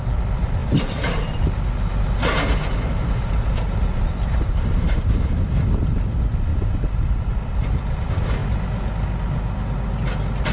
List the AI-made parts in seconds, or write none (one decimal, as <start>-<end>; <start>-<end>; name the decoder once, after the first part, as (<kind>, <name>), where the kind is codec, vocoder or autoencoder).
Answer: 0.6-5.2 (vocoder, BigVGAN v2); 6.5-7.3